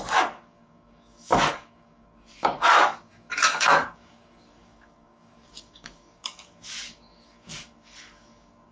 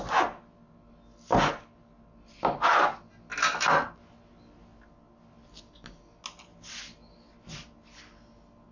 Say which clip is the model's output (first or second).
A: first